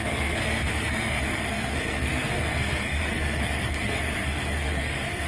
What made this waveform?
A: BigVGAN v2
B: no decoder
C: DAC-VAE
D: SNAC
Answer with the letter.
D